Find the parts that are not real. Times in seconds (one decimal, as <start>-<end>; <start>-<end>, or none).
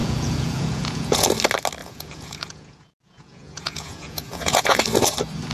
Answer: 0.0-1.3; 1.8-4.8